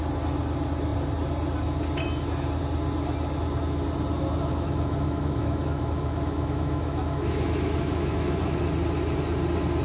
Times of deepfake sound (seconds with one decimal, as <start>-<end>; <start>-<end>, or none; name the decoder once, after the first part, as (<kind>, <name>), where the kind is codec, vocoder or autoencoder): 4.5-8.6 (autoencoder, DAC-VAE)